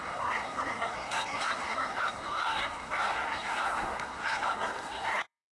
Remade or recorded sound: remade